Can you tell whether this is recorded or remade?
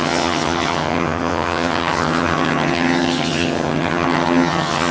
remade